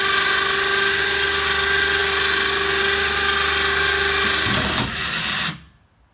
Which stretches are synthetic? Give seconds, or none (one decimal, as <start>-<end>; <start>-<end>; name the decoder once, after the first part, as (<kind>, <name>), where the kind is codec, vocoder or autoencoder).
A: none